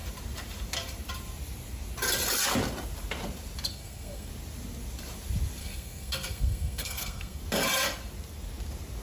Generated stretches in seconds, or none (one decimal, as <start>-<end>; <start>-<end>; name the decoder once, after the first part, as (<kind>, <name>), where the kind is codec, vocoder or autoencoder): 3.7-4.3 (codec, SNAC); 5.6-7.4